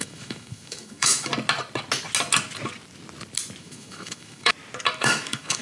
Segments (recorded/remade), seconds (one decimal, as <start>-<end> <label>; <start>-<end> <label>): 0.0-1.3 remade; 1.3-3.6 recorded; 3.6-4.5 remade; 4.5-5.0 recorded; 5.0-5.6 remade